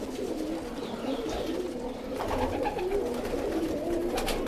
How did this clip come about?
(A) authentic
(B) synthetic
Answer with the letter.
A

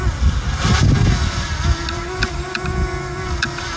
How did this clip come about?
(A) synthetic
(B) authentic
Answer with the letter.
B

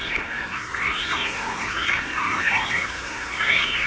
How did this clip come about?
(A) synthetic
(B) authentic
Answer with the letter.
A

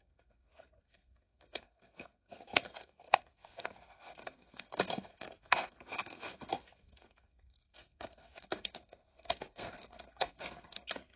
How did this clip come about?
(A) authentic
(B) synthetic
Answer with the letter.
B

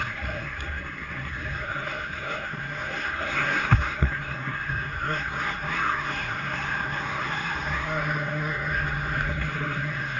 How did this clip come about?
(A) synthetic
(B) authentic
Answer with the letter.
A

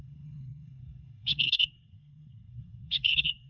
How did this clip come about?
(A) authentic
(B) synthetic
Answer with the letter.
B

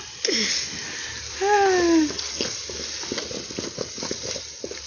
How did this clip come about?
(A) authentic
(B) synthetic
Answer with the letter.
A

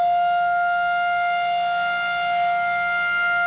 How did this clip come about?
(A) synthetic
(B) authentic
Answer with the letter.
B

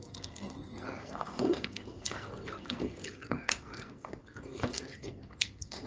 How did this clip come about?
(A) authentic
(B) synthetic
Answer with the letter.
B